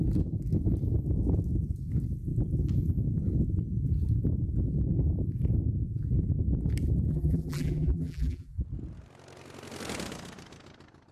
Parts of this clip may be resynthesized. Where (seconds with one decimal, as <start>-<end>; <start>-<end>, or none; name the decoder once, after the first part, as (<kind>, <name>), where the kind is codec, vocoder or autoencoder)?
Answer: 7.1-8.6 (vocoder, BigVGAN v2)